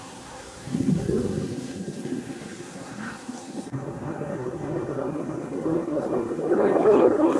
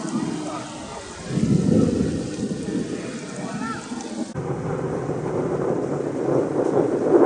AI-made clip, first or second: first